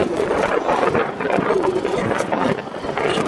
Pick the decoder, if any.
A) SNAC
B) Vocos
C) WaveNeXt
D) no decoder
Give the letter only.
B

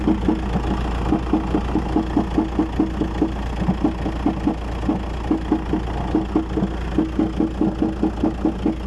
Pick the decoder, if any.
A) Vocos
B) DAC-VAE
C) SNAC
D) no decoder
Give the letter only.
D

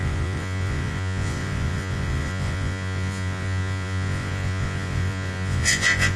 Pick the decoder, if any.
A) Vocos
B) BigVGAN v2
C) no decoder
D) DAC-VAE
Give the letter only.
A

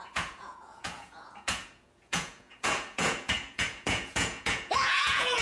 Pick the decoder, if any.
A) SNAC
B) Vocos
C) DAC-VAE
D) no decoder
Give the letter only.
B